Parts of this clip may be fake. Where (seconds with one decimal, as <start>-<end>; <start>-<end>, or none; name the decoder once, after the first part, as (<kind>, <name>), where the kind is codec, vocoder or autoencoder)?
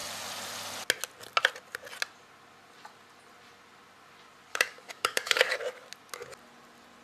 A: 4.5-5.6 (codec, DAC)